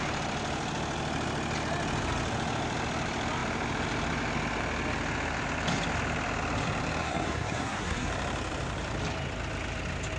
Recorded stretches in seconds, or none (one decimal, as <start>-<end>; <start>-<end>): 0.0-7.0; 8.1-10.2